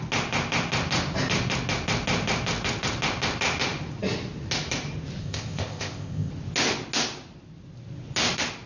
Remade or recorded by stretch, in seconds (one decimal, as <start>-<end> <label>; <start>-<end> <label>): 0.0-5.2 recorded; 5.2-6.3 remade; 6.3-8.7 recorded